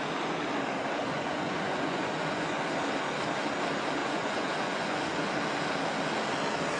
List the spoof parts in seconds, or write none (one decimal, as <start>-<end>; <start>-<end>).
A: 1.0-2.6; 4.0-5.3